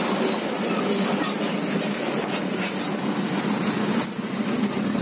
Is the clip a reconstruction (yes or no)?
no